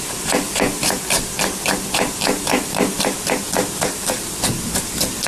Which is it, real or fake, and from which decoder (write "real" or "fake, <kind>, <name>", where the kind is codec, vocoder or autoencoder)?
real